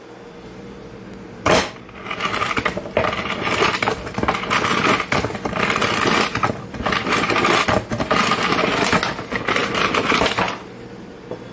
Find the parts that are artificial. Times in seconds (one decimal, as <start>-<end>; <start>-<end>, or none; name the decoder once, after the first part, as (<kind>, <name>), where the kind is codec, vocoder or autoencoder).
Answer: none